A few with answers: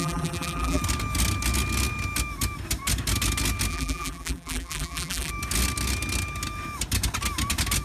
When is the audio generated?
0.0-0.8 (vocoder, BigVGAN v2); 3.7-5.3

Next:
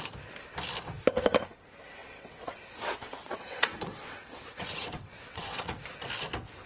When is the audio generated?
2.0-2.7 (vocoder, WaveNeXt); 3.1-5.8

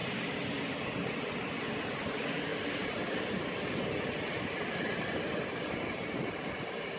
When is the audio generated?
none